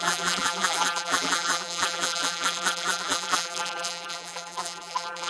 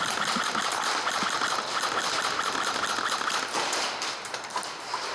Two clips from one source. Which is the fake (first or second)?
first